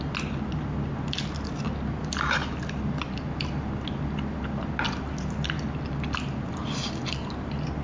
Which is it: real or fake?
real